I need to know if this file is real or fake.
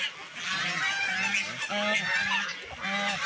real